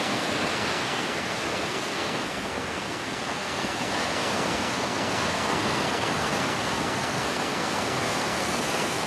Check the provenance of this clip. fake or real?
fake